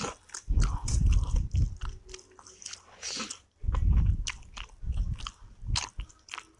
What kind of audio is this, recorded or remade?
recorded